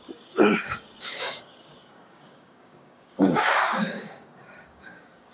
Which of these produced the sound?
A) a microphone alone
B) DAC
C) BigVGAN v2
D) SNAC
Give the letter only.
B